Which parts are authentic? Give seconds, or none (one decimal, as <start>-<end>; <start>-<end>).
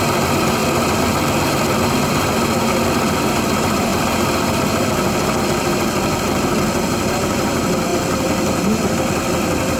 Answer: 0.6-1.8; 3.9-7.1; 7.9-8.9